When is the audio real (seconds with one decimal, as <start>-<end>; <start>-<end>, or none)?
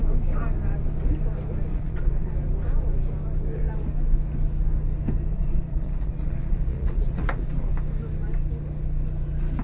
0.0-1.7; 2.3-5.3; 7.7-9.6